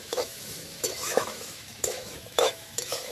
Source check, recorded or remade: remade